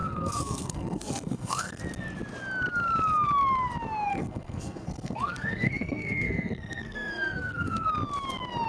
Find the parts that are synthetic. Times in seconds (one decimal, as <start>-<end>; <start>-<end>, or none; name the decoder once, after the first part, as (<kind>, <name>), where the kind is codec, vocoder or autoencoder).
0.0-1.8 (codec, SNAC); 4.1-7.9